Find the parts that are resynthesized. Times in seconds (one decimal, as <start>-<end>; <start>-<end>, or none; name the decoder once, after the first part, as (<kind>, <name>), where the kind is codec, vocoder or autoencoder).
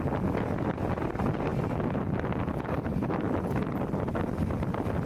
none